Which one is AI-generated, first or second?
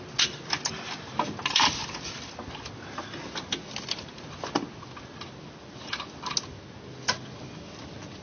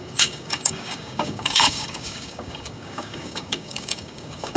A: second